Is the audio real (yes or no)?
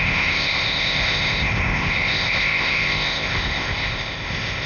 no